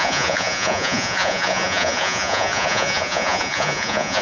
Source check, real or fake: fake